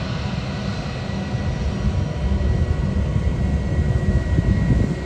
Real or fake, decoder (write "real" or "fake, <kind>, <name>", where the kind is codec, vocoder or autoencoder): real